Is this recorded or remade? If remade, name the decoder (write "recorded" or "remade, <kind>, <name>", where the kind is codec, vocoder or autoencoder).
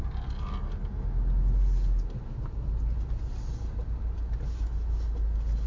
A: recorded